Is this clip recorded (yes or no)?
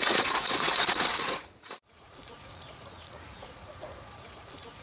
no